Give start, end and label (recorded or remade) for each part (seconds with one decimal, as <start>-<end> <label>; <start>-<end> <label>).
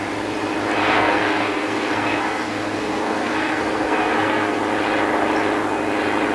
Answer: 0.0-0.8 recorded; 0.8-4.6 remade; 4.6-6.3 recorded